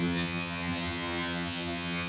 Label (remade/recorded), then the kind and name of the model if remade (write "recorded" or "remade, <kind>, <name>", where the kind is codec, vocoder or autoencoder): remade, vocoder, HiFi-GAN